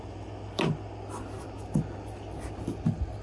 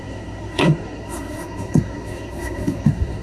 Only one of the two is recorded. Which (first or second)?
first